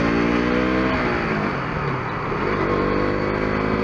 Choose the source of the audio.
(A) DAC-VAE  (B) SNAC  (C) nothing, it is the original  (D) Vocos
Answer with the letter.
C